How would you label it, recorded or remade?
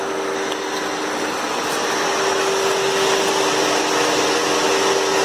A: recorded